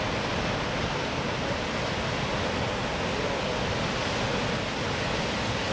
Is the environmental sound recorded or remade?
recorded